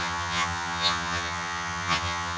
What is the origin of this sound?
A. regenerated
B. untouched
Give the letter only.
A